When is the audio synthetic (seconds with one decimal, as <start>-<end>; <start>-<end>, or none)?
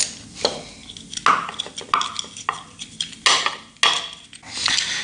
none